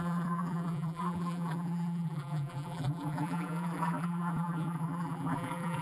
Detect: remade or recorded remade